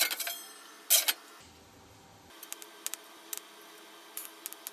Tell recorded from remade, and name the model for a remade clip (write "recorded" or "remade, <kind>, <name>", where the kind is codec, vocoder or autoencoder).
recorded